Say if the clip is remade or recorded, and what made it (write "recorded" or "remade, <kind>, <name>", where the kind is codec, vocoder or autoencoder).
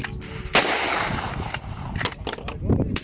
recorded